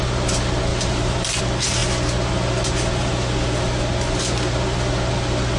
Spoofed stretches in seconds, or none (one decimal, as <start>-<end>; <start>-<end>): 0.7-1.4